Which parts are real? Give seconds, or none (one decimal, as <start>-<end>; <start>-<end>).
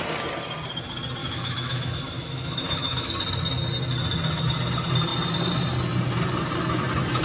0.0-1.2; 3.1-7.2